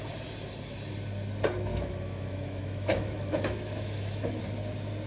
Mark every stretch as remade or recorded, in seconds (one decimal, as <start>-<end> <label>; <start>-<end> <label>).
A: 0.0-1.7 recorded; 1.7-4.4 remade; 4.4-5.1 recorded